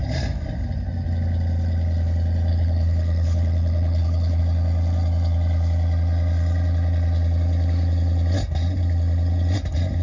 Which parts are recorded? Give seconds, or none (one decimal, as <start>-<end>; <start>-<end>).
0.0-2.5; 4.4-10.0